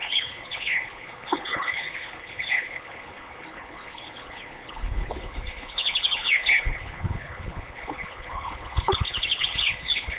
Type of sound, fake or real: fake